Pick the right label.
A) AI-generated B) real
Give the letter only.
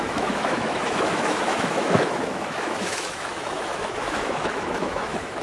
A